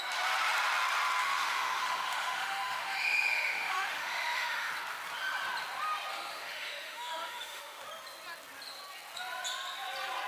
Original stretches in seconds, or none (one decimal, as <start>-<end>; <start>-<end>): 0.0-1.2; 4.7-6.1; 7.8-10.3